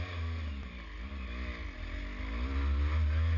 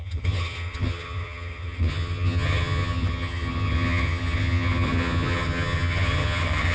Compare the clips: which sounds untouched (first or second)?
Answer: first